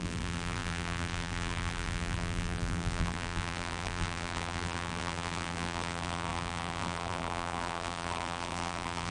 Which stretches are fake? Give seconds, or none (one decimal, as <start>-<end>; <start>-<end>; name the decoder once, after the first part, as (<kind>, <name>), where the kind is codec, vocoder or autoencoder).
0.0-9.1 (vocoder, BigVGAN v2)